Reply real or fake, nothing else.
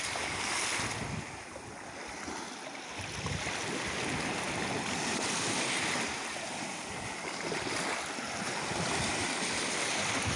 real